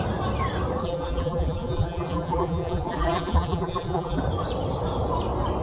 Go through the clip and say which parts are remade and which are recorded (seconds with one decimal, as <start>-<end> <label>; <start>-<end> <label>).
0.0-0.8 recorded; 0.8-4.2 remade; 4.2-5.6 recorded